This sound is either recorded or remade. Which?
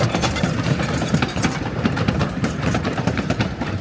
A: remade